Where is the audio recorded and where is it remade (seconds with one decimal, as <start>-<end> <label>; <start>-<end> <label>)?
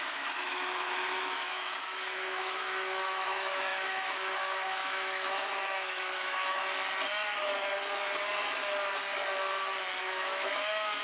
0.0-6.6 remade; 6.6-10.0 recorded; 10.0-11.0 remade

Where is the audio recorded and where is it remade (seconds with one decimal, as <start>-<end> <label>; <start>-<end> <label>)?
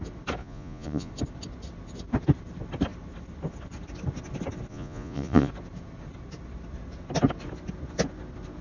0.0-0.4 recorded; 0.4-1.1 remade; 1.1-4.7 recorded; 4.7-5.5 remade; 5.5-8.6 recorded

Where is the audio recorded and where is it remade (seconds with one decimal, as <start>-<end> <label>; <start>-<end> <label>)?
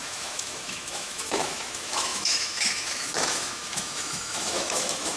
0.0-5.2 remade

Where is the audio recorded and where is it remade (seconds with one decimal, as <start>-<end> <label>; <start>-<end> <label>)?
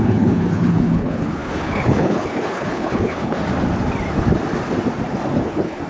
0.0-3.4 remade; 3.4-5.4 recorded; 5.4-5.9 remade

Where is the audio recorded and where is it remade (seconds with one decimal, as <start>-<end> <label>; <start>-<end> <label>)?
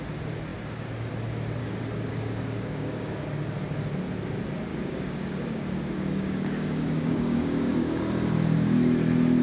0.0-1.6 recorded; 1.6-3.2 remade; 3.2-4.7 recorded; 4.7-8.0 remade; 8.0-9.4 recorded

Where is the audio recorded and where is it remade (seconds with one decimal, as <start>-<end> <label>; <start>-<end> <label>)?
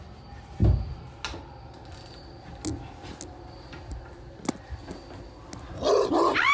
0.0-6.5 recorded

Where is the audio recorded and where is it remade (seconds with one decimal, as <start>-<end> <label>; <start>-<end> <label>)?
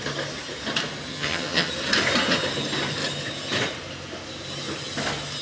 0.0-1.1 recorded; 1.1-1.7 remade; 1.7-5.4 recorded